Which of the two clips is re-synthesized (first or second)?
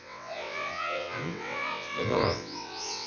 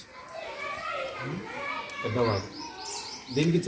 first